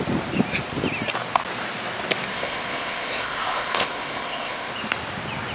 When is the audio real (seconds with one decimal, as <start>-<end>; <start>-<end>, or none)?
0.0-2.3; 4.7-5.5